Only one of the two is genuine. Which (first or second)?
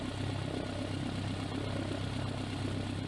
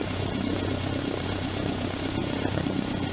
first